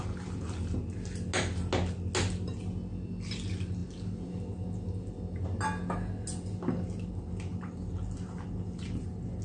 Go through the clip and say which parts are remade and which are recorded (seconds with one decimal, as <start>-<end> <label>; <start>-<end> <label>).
0.0-9.4 recorded